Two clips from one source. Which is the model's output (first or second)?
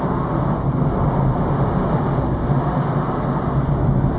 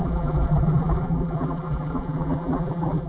second